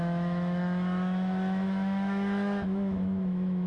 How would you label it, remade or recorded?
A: remade